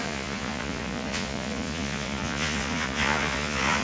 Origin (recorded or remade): remade